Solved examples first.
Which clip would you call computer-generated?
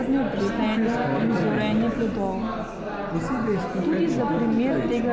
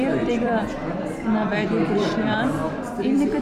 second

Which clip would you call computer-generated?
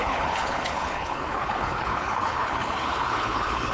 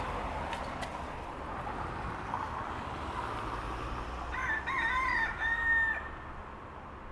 first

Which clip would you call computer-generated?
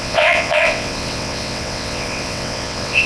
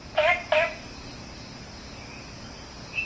first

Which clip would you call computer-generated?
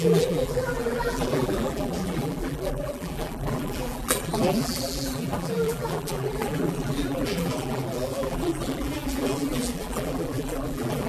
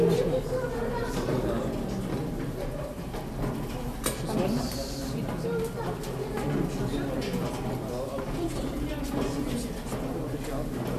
first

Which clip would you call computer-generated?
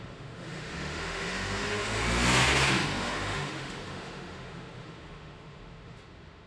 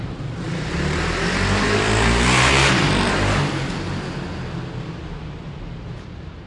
first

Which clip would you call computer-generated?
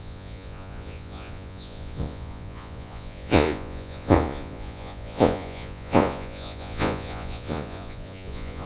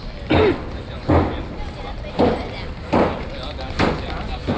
first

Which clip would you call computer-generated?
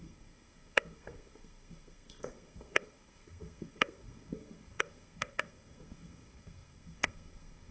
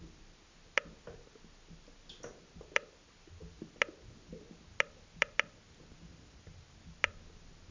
first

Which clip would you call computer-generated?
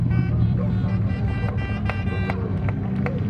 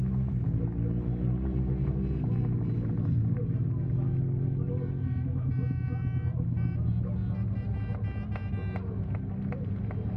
first